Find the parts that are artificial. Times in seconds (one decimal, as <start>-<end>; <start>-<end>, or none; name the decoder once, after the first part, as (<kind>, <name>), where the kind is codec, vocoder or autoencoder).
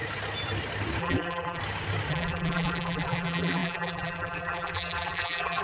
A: 1.0-1.6 (vocoder, BigVGAN v2); 2.1-5.6